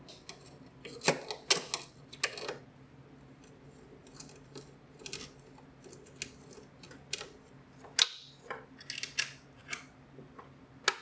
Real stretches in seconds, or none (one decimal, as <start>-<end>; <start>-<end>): 0.0-11.0